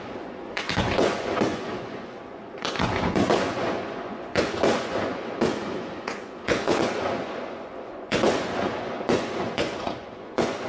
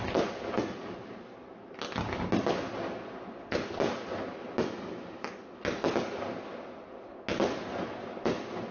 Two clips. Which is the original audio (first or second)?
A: second